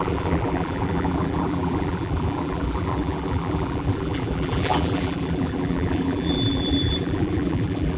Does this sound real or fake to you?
fake